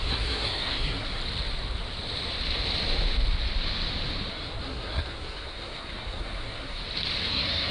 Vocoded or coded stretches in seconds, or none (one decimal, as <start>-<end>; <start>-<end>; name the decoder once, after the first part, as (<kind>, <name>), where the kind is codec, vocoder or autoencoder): 0.0-1.2 (codec, SNAC); 4.3-6.8; 7.3-7.7